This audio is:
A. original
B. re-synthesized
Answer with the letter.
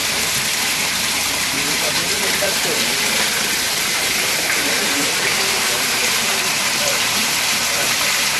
B